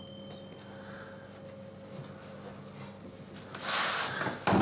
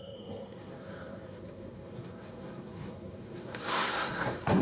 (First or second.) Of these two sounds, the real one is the first